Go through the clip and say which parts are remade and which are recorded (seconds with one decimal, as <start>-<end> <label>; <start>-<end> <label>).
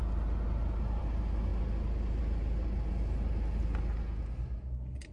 0.0-5.1 recorded